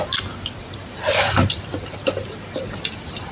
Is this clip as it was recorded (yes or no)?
yes